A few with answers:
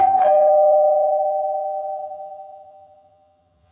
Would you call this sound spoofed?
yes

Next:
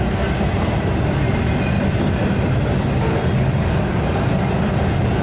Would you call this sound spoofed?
no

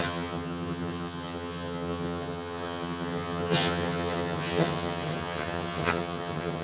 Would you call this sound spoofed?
yes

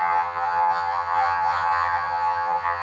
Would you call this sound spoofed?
yes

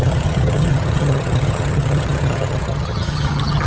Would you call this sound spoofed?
yes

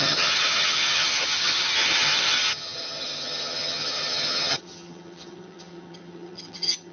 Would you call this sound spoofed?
yes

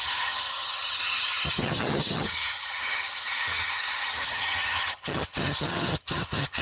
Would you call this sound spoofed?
yes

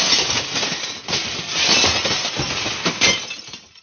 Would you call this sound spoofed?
no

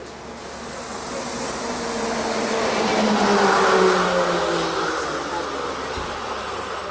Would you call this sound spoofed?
no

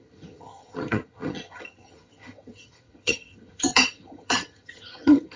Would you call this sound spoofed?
yes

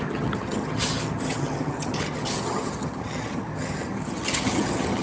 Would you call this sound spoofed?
yes